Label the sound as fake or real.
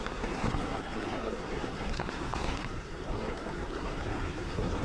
fake